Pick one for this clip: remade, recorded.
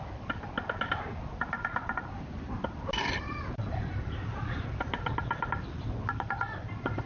recorded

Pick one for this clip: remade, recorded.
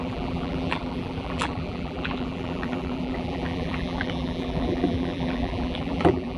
remade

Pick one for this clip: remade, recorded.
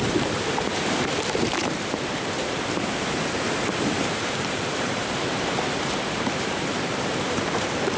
remade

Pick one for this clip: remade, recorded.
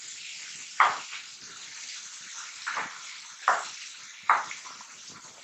recorded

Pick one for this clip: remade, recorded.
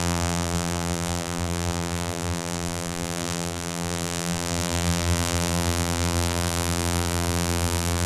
remade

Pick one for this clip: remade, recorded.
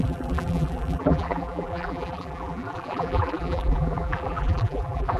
remade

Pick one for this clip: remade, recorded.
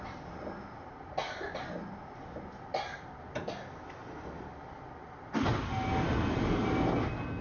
recorded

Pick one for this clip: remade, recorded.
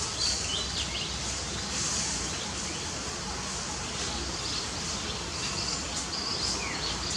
recorded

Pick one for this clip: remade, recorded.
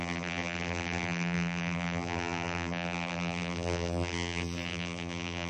remade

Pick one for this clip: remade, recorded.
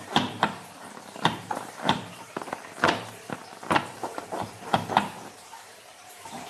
remade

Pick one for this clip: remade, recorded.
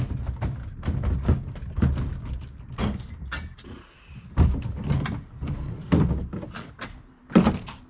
recorded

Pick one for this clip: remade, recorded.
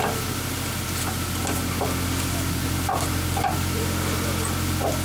recorded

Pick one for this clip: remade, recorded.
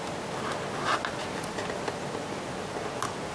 recorded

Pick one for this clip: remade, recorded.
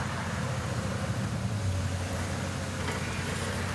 recorded